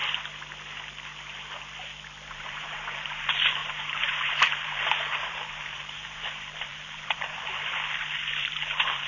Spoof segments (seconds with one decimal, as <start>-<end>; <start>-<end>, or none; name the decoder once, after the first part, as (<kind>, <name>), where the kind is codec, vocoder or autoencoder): 2.3-9.1 (vocoder, BigVGAN v2)